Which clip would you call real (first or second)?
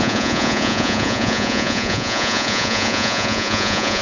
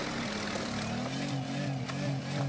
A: second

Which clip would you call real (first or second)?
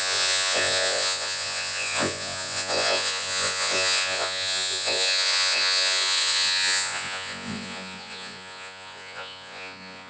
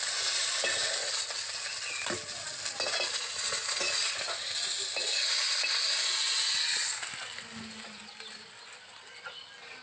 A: second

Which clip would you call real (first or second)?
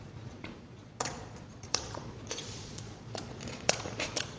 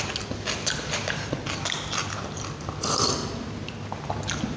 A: second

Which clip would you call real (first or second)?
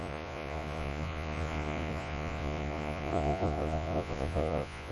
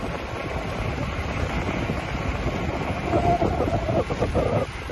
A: second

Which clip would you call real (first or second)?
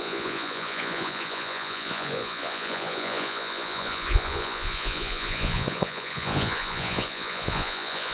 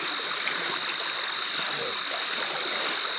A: second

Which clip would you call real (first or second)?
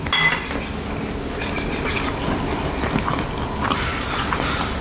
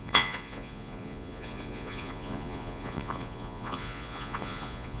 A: first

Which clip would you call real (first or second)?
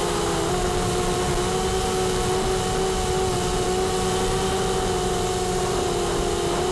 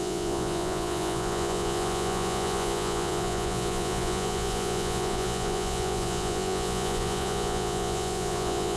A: first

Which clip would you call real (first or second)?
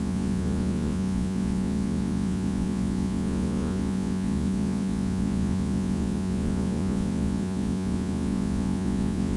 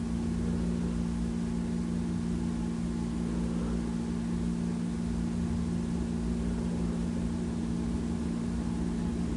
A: second